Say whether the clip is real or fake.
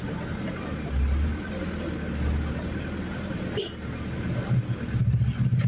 real